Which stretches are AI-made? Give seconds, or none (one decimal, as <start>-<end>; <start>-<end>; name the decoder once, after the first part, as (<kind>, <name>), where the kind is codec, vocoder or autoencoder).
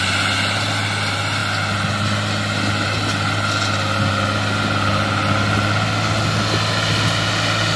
none